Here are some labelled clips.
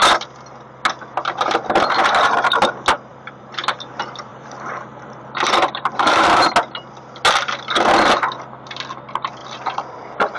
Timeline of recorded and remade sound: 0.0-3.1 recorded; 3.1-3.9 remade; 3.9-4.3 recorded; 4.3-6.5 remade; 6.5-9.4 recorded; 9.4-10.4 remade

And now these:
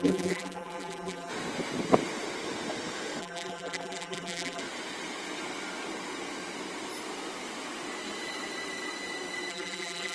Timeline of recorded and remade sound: 0.0-1.3 remade; 1.3-3.2 recorded; 3.2-4.6 remade; 4.6-9.5 recorded; 9.5-10.1 remade

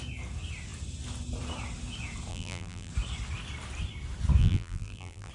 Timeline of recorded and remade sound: 0.0-2.3 recorded; 2.3-2.9 remade; 2.9-4.4 recorded; 4.4-5.3 remade